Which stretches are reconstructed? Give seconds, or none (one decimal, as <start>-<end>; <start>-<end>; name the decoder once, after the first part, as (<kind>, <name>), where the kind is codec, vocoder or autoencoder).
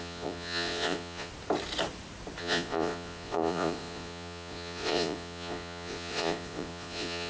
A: 0.0-1.3 (vocoder, Vocos); 2.4-7.3